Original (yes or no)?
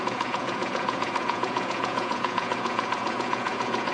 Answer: no